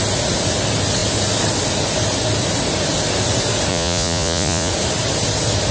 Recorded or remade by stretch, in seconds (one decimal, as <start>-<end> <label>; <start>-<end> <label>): 0.0-3.7 recorded; 3.7-4.7 remade; 4.7-5.7 recorded

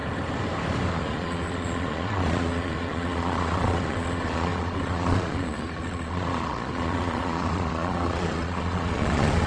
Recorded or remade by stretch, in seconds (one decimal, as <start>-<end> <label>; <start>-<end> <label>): 0.0-0.9 recorded; 0.9-9.5 remade